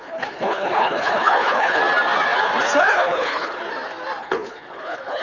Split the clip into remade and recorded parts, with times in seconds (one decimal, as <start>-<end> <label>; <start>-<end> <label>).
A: 0.0-1.8 remade; 1.8-2.8 recorded; 2.8-3.6 remade; 3.6-4.2 recorded; 4.2-5.2 remade